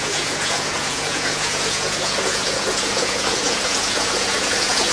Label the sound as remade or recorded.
remade